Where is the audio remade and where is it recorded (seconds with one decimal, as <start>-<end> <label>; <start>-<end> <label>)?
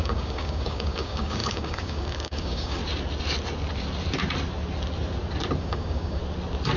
0.0-2.8 remade; 2.8-5.6 recorded; 5.6-6.2 remade; 6.2-6.8 recorded